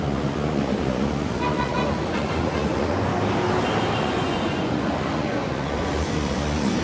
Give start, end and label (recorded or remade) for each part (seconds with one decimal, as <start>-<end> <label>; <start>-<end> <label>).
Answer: 0.0-3.1 remade; 3.1-4.0 recorded; 4.0-6.8 remade